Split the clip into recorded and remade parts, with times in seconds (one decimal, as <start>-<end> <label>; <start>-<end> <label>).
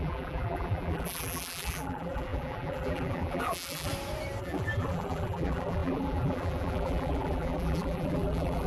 0.0-3.9 remade; 3.9-4.4 recorded; 4.4-8.7 remade